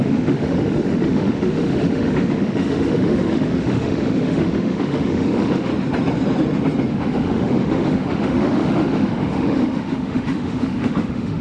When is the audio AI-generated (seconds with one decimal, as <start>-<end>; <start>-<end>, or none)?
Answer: 0.0-5.7; 6.9-11.4